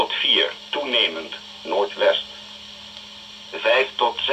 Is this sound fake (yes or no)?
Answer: no